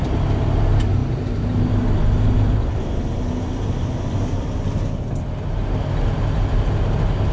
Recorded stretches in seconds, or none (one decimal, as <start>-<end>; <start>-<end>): 0.0-7.3